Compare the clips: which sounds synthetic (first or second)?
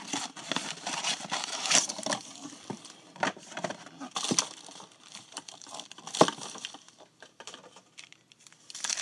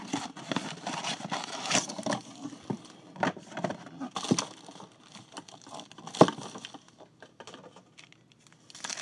first